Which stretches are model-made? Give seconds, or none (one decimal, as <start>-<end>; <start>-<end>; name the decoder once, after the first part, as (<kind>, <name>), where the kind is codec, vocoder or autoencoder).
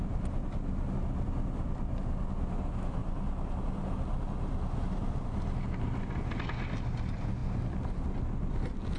none